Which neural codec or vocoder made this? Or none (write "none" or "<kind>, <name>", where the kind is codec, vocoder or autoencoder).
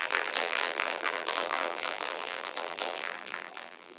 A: vocoder, BigVGAN v2